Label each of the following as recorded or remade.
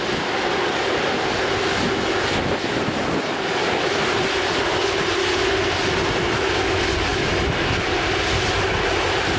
recorded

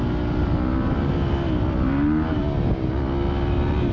recorded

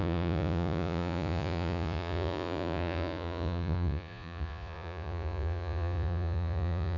remade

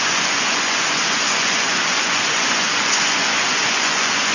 remade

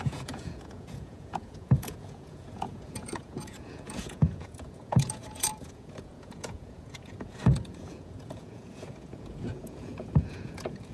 remade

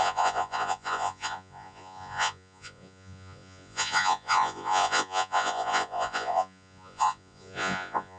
remade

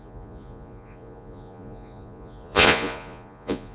remade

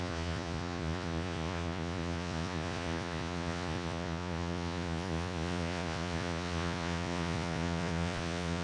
remade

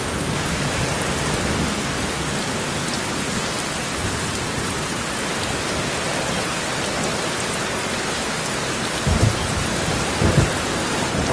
recorded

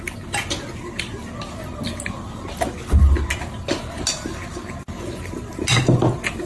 recorded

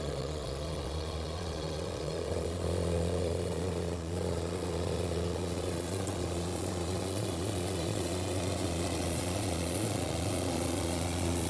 remade